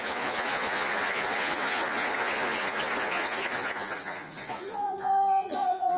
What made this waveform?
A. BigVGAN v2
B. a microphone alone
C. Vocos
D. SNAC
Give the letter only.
C